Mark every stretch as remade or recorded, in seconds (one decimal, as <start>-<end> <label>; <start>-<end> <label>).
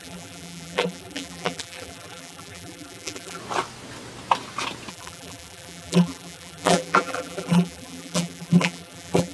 0.0-3.4 remade; 3.4-4.9 recorded; 4.9-9.3 remade